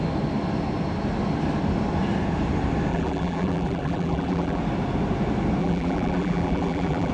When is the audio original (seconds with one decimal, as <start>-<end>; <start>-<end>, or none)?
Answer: 0.0-2.9; 4.6-5.6